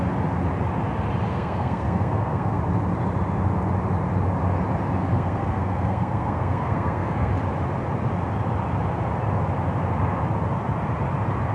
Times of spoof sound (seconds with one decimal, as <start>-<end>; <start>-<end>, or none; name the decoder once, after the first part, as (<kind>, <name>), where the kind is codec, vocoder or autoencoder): 1.3-2.6 (codec, SNAC); 5.1-7.3